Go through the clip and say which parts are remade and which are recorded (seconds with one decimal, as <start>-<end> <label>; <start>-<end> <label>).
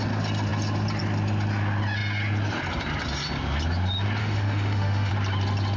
0.0-4.2 recorded; 4.2-5.1 remade; 5.1-5.8 recorded